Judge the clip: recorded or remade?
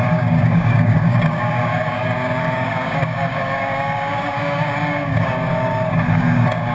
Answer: remade